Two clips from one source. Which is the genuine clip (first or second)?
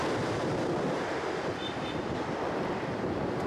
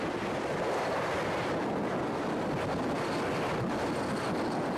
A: second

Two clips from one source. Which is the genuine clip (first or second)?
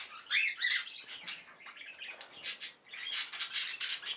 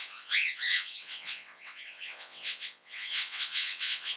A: first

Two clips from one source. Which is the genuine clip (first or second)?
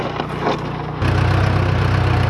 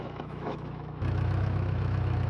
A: first